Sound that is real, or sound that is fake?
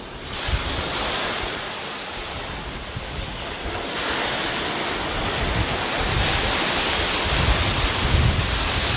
real